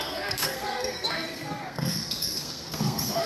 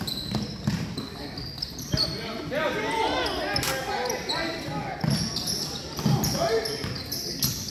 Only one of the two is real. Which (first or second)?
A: second